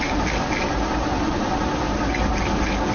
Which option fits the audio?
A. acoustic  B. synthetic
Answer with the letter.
A